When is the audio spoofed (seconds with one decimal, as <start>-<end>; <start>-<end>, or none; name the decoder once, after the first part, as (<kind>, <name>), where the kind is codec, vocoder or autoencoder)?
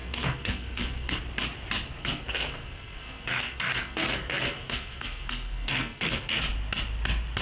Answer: 0.0-1.2 (codec, SNAC); 2.0-6.4